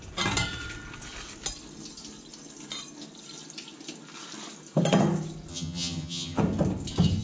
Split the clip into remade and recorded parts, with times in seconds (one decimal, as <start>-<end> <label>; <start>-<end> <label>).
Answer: 0.0-5.5 recorded; 5.5-6.4 remade; 6.4-7.2 recorded